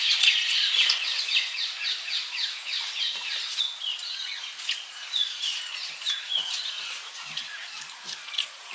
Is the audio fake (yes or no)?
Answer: yes